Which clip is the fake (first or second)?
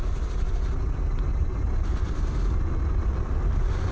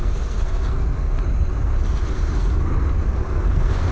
second